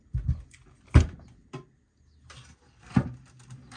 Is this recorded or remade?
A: recorded